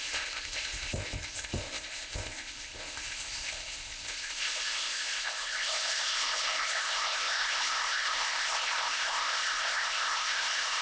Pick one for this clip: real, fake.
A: fake